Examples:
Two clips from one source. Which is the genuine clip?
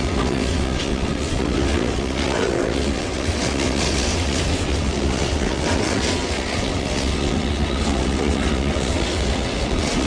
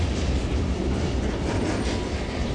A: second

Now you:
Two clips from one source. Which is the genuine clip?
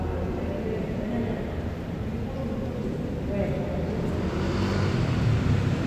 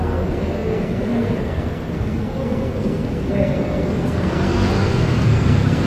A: first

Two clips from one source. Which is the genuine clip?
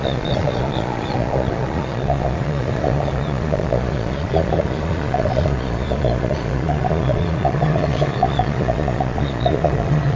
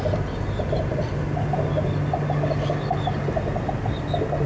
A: second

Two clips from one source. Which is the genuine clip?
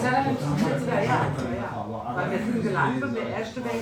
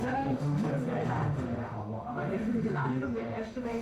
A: first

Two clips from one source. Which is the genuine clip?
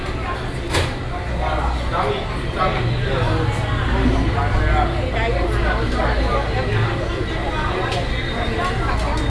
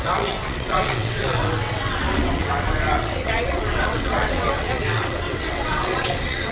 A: first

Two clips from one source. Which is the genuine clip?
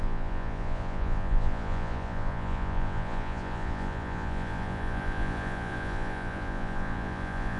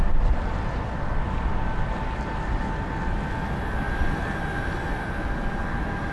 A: second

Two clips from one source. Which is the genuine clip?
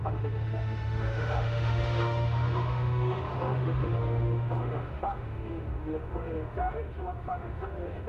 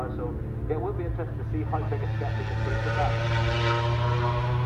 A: second